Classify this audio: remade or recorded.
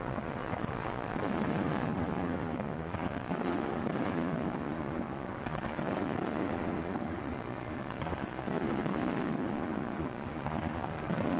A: remade